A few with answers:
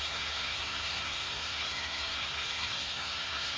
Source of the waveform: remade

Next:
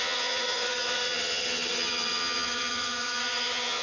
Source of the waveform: remade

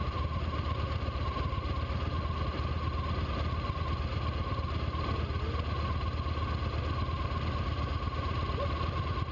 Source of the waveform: recorded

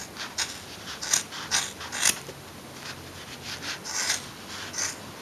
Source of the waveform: recorded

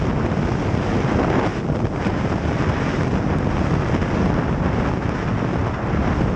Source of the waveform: recorded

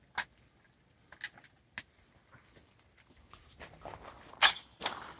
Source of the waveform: recorded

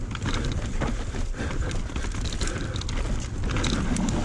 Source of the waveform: recorded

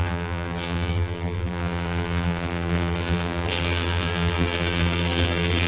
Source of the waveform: remade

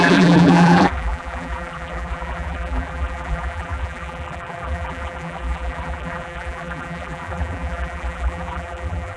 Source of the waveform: remade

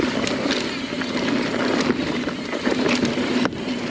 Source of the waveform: recorded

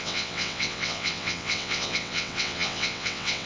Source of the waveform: remade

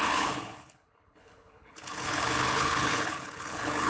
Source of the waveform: remade